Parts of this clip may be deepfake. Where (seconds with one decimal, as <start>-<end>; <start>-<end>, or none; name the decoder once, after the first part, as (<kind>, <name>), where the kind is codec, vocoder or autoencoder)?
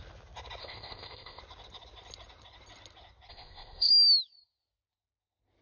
0.6-1.4 (codec, ZipCodec); 3.3-3.9